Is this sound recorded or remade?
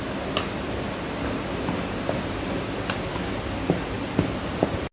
recorded